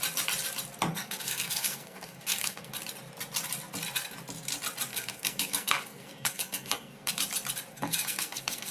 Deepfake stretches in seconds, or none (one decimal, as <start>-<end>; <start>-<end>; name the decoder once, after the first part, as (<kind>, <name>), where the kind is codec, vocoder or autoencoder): 0.9-2.7 (codec, SNAC); 4.9-7.1; 7.7-8.7